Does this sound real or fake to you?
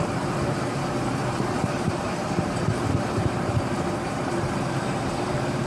fake